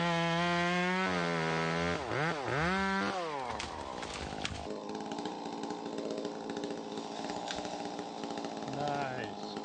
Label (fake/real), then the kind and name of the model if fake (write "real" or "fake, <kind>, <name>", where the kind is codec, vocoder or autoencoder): real